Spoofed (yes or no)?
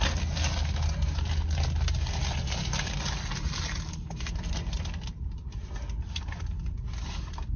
no